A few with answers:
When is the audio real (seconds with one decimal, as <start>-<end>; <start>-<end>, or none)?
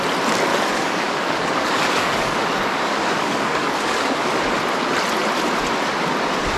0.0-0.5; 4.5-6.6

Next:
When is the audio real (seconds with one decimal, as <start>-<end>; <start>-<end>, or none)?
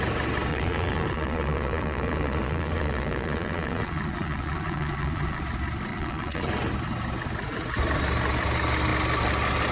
0.0-0.5; 5.4-5.9; 6.5-9.7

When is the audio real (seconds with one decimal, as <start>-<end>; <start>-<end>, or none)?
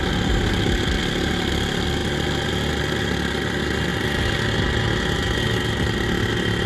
0.0-6.7